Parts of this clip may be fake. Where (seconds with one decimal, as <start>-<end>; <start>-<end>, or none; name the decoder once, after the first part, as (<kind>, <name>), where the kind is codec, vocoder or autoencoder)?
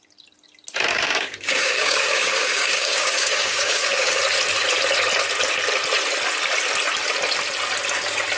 0.9-4.2 (codec, DAC)